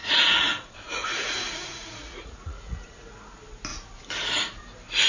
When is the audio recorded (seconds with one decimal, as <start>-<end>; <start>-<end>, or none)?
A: 3.1-5.1